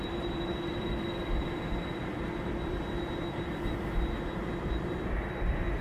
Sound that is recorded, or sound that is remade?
remade